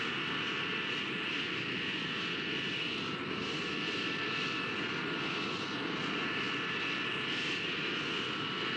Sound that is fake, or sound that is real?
fake